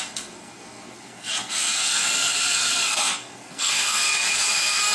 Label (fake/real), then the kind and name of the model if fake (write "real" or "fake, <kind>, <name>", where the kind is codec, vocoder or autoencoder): fake, codec, SNAC